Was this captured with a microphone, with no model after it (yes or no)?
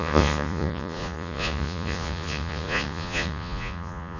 no